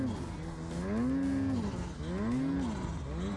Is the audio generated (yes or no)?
no